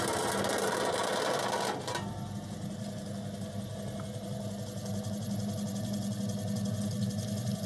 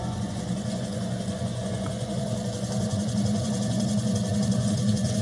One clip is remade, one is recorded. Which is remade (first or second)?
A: second